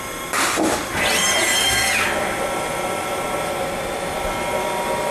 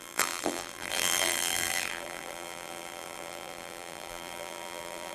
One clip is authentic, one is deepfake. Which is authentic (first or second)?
first